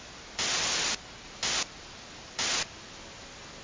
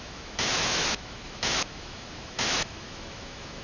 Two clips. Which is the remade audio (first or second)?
second